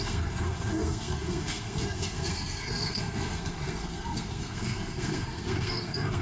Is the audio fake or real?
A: fake